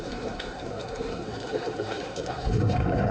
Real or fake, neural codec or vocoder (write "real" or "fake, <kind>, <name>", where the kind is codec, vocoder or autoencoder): fake, codec, SNAC